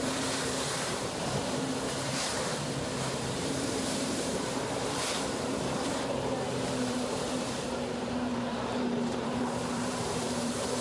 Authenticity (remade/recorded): remade